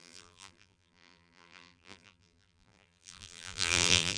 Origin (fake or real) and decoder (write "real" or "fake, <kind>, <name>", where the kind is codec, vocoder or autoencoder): fake, vocoder, BigVGAN v2